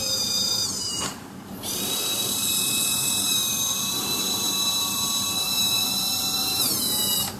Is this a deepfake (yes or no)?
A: yes